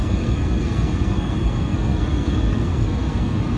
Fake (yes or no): yes